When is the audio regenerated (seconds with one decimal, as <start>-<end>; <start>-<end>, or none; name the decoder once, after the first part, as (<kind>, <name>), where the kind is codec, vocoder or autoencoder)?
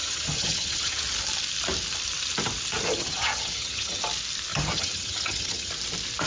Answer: 0.0-1.0 (vocoder, HiFi-GAN); 2.9-4.0; 4.5-5.7